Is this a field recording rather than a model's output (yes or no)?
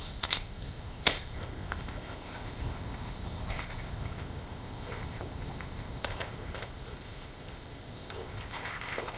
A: no